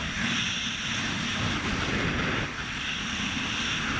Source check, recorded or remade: recorded